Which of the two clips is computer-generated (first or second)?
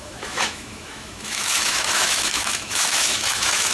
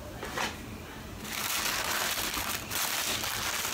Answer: first